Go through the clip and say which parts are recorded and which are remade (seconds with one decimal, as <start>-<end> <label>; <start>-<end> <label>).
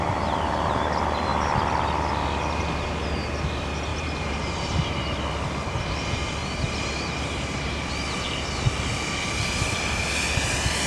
0.0-3.9 recorded; 3.9-4.9 remade; 4.9-6.4 recorded; 6.4-7.9 remade; 7.9-10.9 recorded